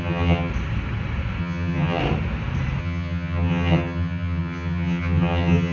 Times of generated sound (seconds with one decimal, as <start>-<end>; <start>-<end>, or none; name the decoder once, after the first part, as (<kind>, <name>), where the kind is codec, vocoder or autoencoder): 0.0-0.5 (vocoder, HiFi-GAN); 1.4-2.0; 2.8-5.7